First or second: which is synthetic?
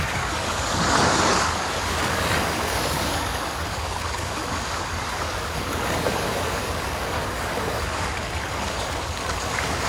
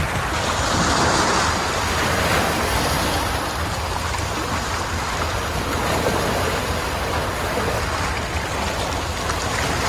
first